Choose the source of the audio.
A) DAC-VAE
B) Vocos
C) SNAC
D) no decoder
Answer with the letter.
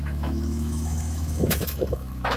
A